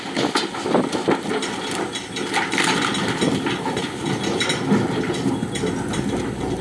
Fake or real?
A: real